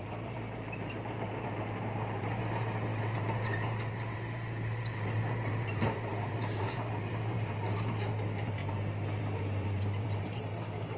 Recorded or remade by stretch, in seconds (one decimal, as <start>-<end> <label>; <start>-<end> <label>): 0.0-8.6 remade; 8.6-9.2 recorded; 9.2-11.0 remade